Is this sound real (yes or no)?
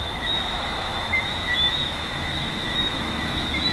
no